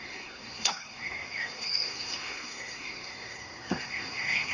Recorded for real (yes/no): no